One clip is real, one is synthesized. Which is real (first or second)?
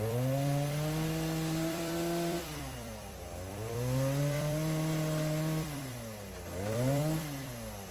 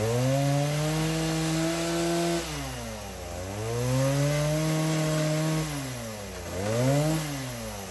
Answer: second